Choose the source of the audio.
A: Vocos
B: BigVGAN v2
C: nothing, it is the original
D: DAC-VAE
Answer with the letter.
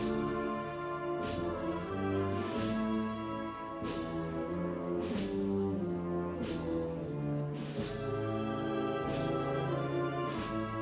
C